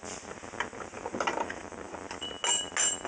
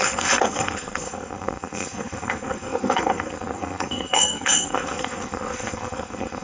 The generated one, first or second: second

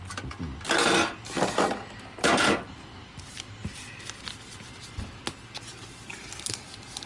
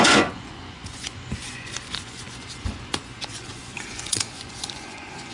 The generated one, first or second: second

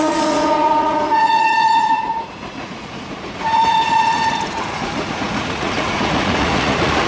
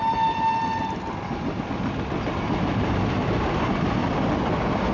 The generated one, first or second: first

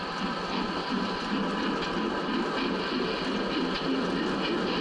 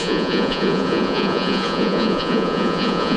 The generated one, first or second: second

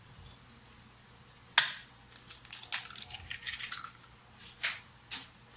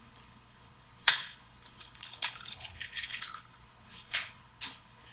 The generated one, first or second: second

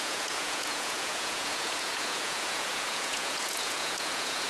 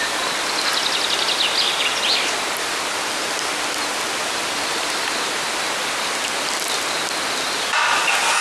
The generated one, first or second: first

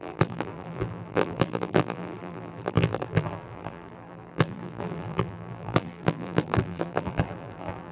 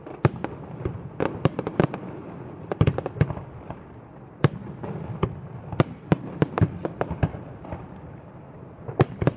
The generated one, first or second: first